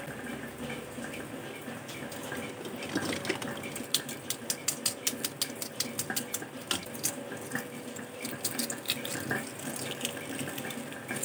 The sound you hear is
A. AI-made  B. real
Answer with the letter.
B